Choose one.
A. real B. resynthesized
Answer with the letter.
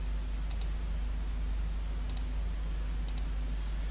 A